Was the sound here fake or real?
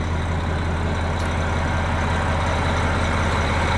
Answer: real